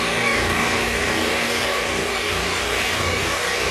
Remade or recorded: remade